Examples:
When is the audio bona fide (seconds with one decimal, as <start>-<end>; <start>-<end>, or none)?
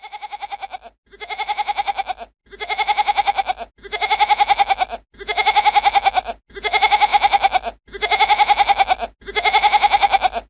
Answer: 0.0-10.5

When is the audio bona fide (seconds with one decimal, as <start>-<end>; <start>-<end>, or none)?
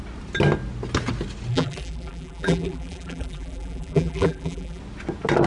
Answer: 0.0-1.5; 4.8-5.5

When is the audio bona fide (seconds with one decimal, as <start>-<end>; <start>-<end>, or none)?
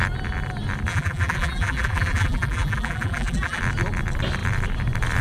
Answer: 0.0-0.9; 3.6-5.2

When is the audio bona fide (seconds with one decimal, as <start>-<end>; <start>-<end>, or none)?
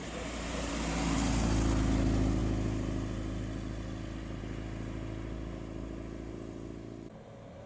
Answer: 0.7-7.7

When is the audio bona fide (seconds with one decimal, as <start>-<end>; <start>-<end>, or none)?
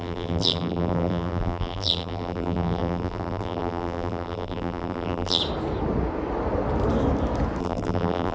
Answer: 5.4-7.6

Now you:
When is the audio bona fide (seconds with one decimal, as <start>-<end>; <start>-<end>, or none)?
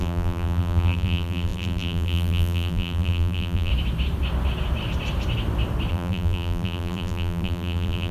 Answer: 3.7-5.9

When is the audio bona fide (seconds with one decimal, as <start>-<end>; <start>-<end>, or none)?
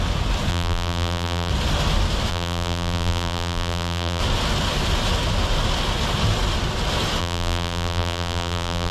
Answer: 0.0-0.5; 1.5-2.3; 4.2-7.2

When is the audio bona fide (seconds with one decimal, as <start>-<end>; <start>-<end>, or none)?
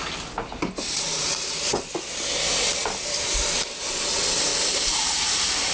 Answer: 0.0-4.5